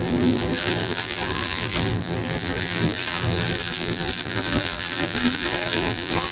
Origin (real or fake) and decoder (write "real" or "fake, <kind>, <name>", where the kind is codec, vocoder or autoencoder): fake, vocoder, BigVGAN v2